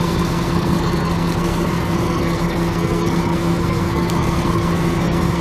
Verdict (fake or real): fake